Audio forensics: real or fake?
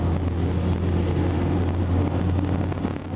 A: real